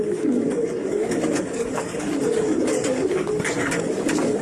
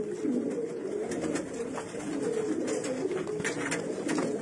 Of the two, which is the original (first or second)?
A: second